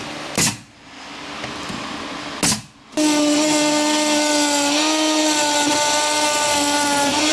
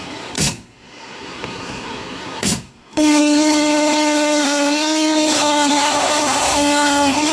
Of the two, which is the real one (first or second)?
first